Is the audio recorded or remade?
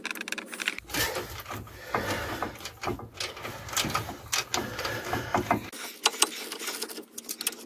recorded